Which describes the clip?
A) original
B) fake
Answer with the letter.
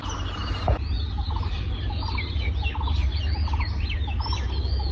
A